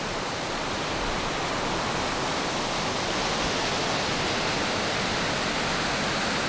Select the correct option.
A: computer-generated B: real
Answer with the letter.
B